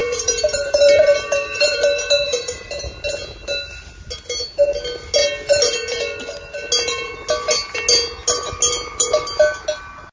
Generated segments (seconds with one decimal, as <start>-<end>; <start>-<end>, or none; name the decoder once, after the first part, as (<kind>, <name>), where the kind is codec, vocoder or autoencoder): 0.0-2.7 (vocoder, BigVGAN v2)

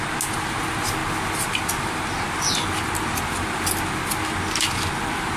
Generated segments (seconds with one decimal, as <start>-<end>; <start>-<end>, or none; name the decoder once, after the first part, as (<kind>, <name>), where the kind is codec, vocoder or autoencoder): none

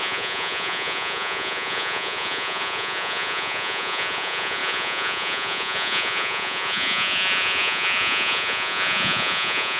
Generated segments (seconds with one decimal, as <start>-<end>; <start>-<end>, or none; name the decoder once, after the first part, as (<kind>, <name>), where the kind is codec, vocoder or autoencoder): 0.0-9.8 (vocoder, Vocos)